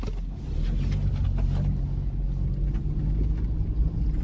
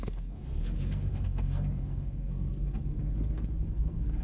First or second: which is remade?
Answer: second